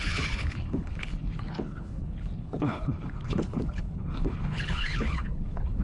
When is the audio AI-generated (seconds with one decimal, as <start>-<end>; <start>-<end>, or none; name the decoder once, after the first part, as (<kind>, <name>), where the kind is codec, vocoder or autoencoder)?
0.0-5.8 (codec, HILCodec)